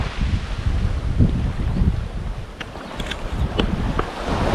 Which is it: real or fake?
real